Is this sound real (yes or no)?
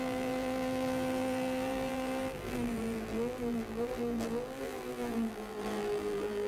no